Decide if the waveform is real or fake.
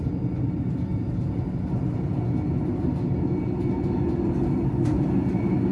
real